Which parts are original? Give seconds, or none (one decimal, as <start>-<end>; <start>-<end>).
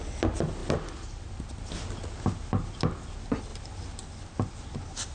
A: 0.0-5.1